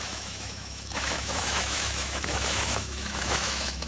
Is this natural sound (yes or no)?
no